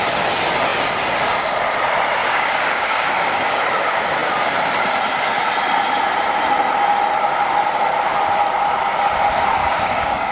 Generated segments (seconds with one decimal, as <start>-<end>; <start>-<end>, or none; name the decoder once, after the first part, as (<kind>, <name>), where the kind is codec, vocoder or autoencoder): 2.2-3.6 (codec, DAC); 9.6-10.3

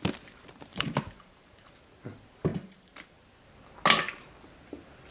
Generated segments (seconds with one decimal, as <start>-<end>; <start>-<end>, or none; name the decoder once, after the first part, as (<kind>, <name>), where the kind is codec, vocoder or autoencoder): 0.7-1.7 (vocoder, BigVGAN v2); 2.5-3.1

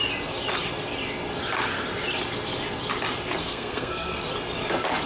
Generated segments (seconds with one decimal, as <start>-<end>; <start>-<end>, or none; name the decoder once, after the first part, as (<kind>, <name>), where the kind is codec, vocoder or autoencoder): 3.4-4.2 (codec, SNAC)